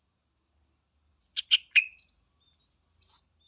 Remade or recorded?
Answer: recorded